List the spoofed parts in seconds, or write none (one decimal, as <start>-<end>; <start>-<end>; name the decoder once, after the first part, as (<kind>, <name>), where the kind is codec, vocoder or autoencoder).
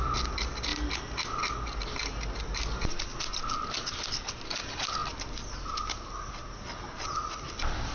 none